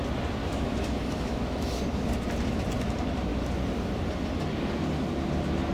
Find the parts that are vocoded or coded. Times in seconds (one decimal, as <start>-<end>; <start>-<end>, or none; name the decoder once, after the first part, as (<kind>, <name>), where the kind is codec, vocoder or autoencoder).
0.4-1.8 (autoencoder, DAC-VAE)